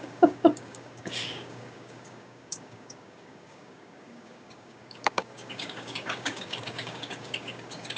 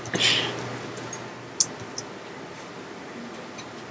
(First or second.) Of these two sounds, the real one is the second